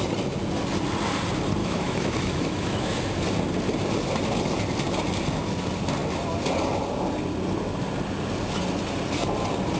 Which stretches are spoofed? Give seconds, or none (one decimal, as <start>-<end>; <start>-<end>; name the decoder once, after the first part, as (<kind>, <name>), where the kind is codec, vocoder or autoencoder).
1.6-3.0 (autoencoder, DAC-VAE)